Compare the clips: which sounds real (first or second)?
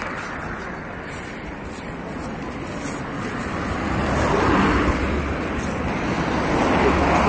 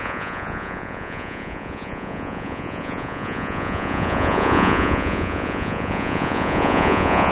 first